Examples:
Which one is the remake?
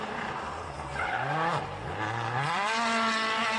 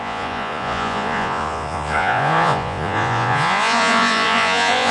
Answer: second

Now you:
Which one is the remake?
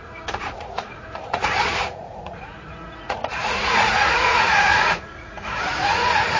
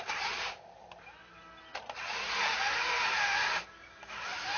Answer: first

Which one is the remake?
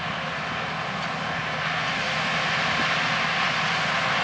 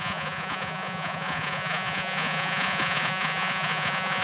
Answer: second